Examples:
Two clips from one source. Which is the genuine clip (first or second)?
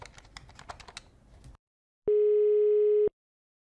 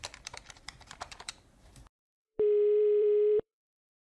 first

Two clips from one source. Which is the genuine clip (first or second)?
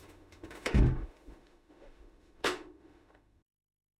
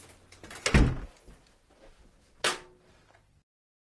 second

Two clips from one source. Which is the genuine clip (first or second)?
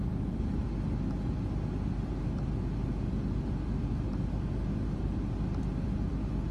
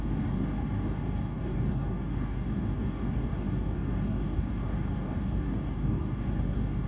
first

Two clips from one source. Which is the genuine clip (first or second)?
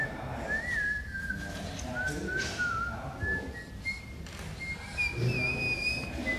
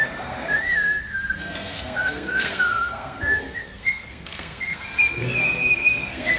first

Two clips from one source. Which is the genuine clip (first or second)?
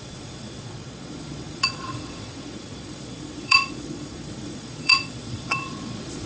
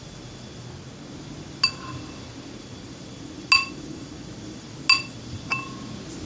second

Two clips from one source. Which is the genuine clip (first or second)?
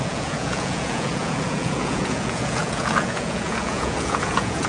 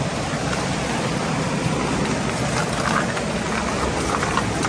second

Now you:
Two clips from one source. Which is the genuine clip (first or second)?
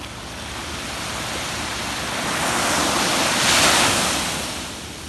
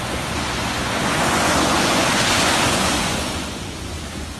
first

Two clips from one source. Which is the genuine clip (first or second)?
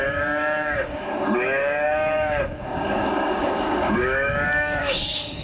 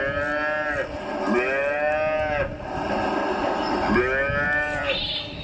second